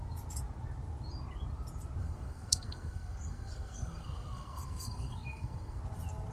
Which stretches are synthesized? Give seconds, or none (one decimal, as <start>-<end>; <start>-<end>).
2.0-5.8

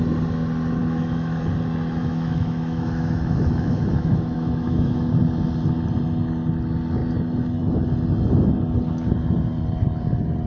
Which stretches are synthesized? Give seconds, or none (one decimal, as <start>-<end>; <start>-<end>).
0.8-1.4; 2.0-5.1

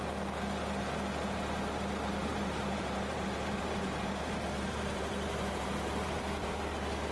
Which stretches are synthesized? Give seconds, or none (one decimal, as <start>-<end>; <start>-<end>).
2.3-6.6

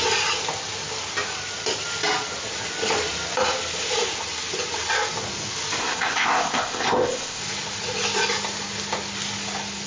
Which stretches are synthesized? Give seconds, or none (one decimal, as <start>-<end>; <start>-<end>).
5.8-7.4

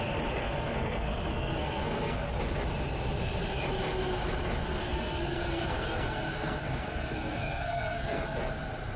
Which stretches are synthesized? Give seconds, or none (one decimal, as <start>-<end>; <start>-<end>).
0.4-2.3; 4.8-8.5